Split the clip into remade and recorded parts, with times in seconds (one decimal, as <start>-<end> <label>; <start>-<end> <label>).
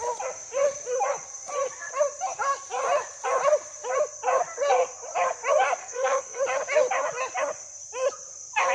0.0-5.8 recorded; 5.8-6.4 remade; 6.4-8.7 recorded